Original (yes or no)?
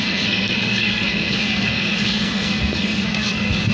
no